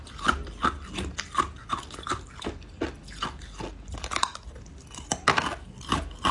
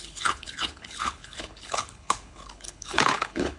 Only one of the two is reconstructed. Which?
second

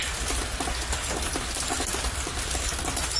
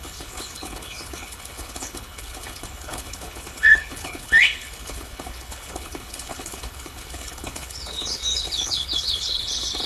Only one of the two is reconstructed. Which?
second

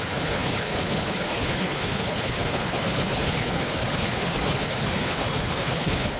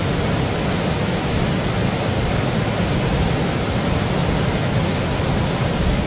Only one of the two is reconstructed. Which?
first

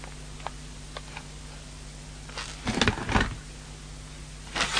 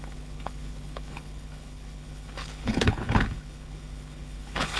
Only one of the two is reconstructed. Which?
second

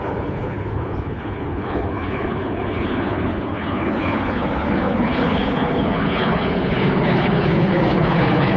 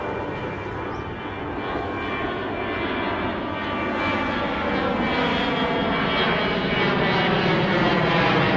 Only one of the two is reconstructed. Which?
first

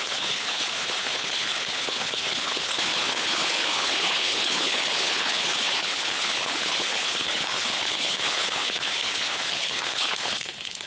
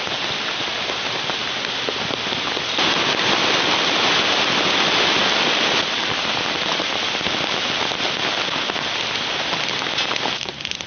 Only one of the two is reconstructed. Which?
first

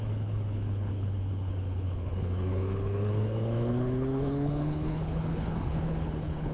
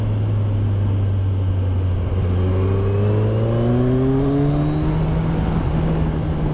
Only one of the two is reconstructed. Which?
first